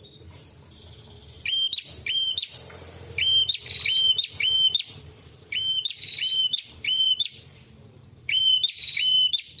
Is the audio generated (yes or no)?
yes